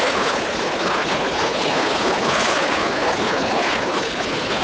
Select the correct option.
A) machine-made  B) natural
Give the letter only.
A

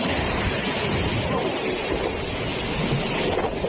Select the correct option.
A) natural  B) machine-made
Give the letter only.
A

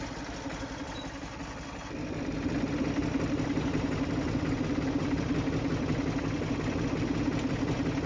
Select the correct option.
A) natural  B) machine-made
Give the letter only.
B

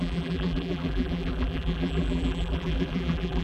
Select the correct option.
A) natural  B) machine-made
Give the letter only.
B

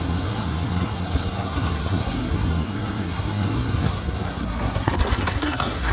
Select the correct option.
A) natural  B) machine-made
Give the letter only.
B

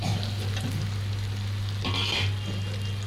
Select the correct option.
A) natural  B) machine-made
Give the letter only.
A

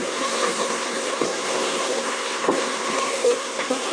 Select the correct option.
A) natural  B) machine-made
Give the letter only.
B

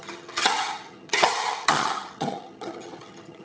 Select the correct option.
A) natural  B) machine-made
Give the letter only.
B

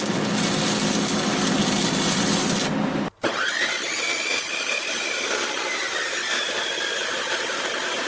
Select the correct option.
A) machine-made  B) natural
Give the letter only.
B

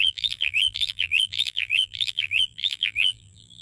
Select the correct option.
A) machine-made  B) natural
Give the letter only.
A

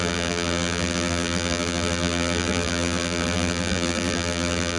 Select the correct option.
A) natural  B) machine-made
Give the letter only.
B